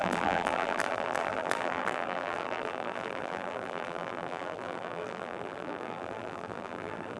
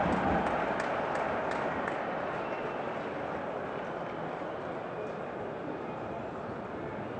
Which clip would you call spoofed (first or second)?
first